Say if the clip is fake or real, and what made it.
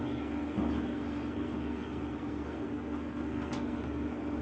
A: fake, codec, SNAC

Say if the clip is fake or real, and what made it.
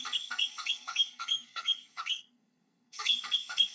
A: fake, codec, SNAC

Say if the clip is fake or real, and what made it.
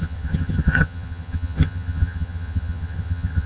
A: fake, vocoder, HiFi-GAN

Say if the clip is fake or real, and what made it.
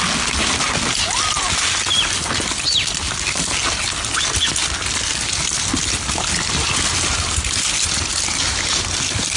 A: real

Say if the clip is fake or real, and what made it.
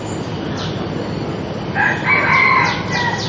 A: real